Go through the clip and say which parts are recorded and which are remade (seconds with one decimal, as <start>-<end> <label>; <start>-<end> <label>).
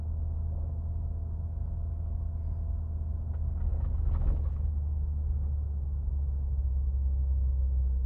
0.0-8.1 recorded